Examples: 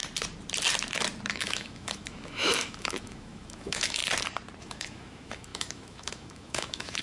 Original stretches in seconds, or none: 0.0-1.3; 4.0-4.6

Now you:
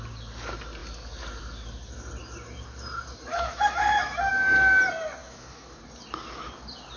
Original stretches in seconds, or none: 0.0-3.3; 4.3-5.2; 5.8-7.0

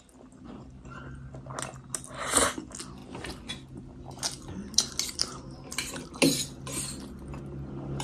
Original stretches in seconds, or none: 0.0-8.0

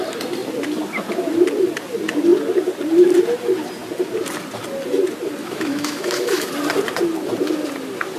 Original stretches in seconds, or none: 0.0-5.4; 6.5-8.2

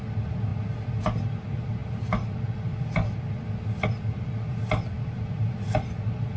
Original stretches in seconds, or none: 0.0-6.4

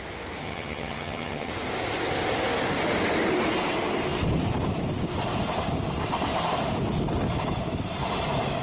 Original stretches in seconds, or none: 0.0-0.4; 1.5-8.6